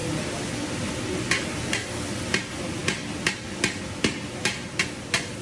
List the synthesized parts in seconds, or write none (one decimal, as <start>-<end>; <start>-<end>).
none